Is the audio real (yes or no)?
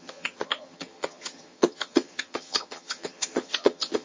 no